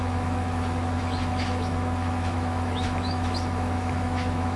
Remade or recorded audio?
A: remade